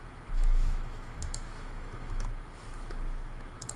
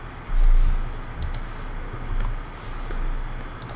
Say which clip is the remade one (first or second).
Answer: first